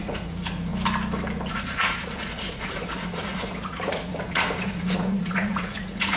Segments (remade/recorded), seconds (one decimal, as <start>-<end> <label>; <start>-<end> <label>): 0.0-0.7 remade; 0.7-1.5 recorded; 1.5-6.2 remade